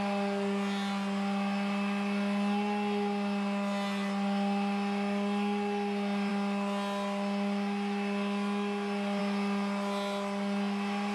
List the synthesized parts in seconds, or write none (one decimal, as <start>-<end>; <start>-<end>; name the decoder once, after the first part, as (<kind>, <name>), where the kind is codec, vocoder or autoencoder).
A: none